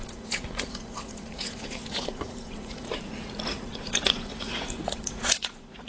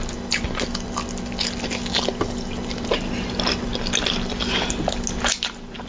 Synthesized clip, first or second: first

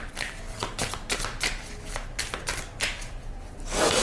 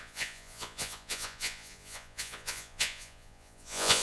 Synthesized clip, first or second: second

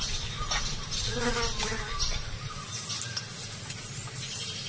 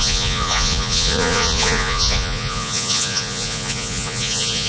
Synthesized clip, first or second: second